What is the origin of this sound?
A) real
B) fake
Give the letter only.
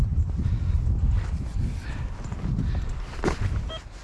A